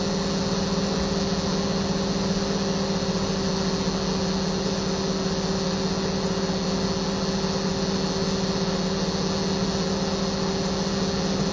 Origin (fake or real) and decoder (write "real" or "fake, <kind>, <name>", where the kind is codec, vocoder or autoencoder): real